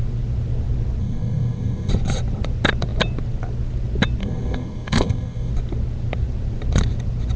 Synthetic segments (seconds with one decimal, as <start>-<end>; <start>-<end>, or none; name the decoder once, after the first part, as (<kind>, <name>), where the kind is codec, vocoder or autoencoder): 1.0-1.9 (codec, SNAC); 4.2-5.5